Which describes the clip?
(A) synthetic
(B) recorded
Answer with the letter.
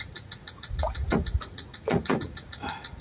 A